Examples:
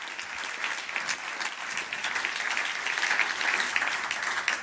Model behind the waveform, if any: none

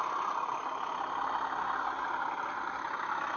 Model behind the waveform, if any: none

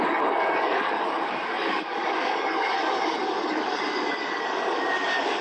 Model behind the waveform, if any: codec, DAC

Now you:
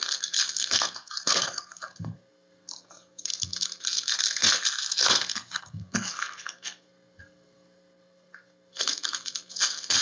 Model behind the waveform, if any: codec, SNAC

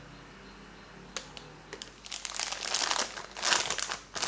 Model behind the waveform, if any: none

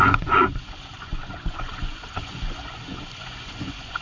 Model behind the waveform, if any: vocoder, Vocos